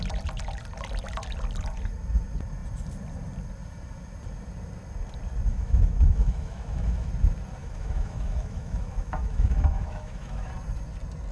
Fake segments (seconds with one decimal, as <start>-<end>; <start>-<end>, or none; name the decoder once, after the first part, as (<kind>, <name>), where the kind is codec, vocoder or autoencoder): 5.5-7.1 (autoencoder, DAC-VAE); 7.6-10.5